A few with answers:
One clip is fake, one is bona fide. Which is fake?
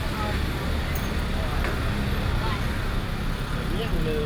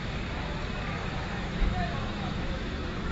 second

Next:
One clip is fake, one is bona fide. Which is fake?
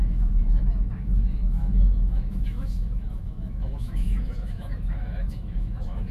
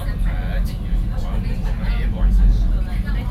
first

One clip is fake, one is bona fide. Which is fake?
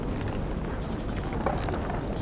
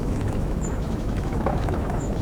second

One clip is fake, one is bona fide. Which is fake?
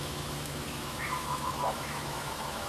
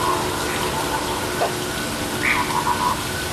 first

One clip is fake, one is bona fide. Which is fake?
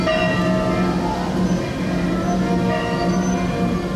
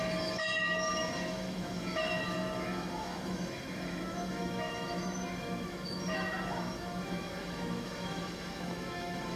second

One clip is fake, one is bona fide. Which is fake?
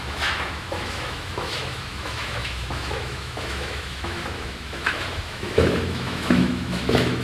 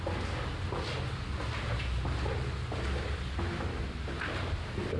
first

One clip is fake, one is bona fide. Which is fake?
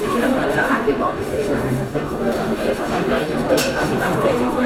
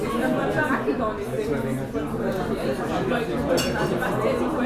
first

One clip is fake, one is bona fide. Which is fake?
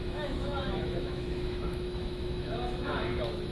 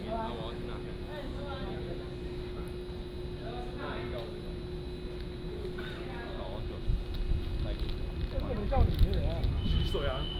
first